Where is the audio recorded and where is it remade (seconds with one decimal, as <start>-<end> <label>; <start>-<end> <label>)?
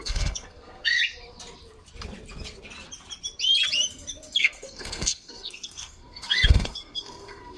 0.0-1.0 remade; 1.0-4.4 recorded; 4.4-7.6 remade